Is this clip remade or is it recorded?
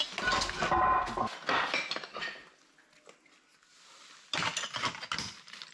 recorded